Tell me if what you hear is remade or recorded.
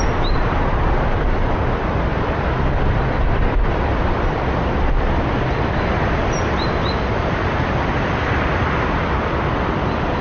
remade